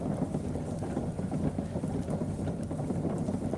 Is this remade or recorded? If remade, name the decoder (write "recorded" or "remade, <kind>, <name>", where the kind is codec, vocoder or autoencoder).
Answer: remade, vocoder, BigVGAN v2